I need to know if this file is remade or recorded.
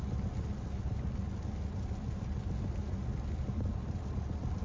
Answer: recorded